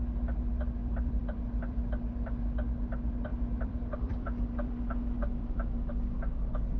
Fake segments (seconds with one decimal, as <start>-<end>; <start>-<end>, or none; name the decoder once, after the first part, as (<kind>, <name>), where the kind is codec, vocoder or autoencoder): 0.8-1.8 (vocoder, BigVGAN v2); 3.3-4.8; 5.4-5.9